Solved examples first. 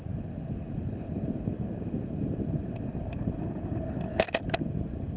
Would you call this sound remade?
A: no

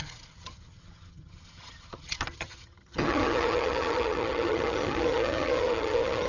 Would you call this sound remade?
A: yes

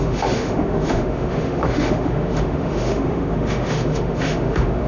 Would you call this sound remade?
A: yes